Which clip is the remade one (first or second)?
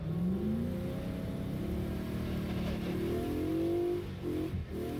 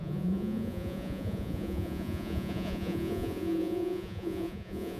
second